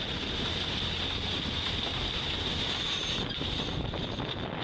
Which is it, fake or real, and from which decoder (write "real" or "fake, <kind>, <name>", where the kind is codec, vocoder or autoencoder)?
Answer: real